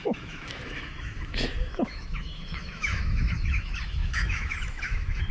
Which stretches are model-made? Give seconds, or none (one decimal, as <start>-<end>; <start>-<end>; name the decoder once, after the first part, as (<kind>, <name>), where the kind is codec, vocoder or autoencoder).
0.0-5.3 (autoencoder, DAC-VAE)